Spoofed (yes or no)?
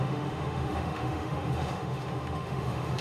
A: yes